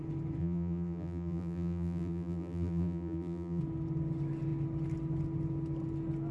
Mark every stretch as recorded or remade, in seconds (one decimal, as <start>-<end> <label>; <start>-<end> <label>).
0.0-0.4 recorded; 0.4-3.6 remade; 3.6-6.3 recorded